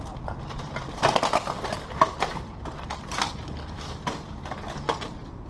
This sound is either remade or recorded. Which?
recorded